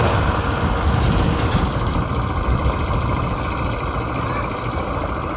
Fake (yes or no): no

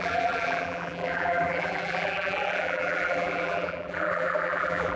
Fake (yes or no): yes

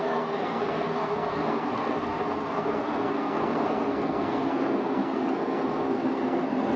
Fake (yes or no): yes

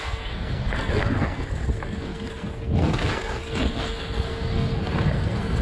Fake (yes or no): yes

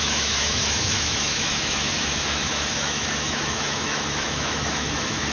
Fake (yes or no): yes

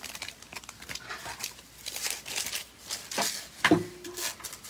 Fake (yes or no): no